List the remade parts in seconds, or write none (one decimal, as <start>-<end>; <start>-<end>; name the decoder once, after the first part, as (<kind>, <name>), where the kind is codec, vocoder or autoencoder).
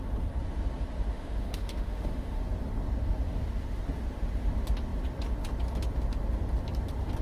1.1-2.4 (autoencoder, DAC-VAE)